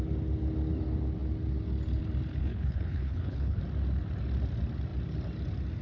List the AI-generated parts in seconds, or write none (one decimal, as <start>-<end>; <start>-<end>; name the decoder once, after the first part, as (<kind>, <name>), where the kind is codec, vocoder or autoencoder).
2.4-3.6 (codec, HILCodec)